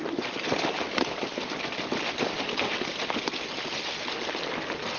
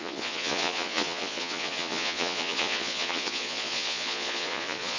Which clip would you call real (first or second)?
first